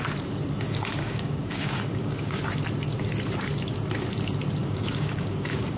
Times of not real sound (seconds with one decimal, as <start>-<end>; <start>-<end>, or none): 0.9-2.4; 4.6-5.8